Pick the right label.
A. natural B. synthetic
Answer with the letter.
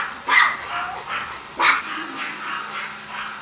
A